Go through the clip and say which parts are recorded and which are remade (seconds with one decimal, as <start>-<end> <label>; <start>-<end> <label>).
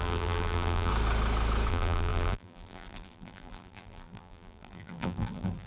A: 0.0-0.9 remade; 0.9-1.7 recorded; 1.7-5.7 remade